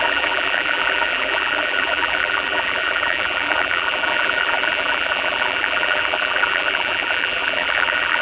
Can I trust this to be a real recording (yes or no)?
no